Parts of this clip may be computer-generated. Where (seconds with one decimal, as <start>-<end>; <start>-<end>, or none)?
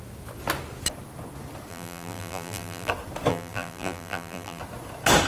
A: 1.7-2.9; 3.3-4.6